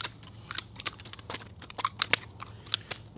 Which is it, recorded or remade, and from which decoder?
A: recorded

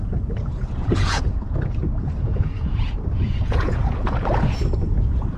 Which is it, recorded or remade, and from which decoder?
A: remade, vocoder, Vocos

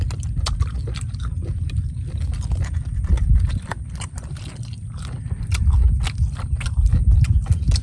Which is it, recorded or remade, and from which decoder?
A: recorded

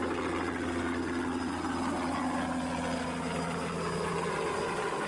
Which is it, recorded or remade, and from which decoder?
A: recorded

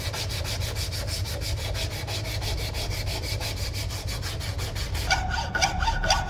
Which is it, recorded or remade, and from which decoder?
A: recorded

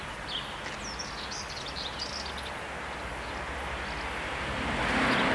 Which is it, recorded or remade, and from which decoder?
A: recorded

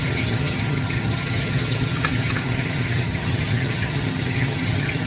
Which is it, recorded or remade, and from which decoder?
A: remade, vocoder, HiFi-GAN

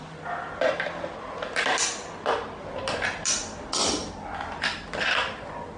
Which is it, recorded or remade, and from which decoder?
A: recorded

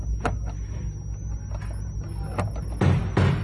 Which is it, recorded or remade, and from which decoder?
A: recorded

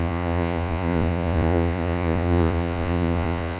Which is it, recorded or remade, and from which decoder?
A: remade, vocoder, Vocos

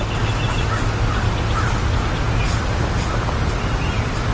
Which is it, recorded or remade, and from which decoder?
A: recorded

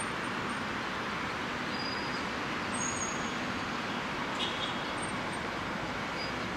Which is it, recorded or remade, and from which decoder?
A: recorded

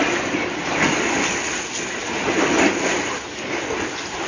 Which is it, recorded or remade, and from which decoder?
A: recorded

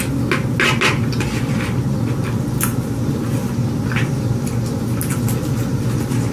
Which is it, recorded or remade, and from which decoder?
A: recorded